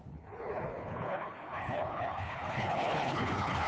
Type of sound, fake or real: fake